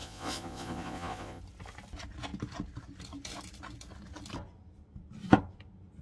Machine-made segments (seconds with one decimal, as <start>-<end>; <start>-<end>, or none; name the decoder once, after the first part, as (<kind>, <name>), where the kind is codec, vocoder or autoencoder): 0.0-1.4 (vocoder, Vocos)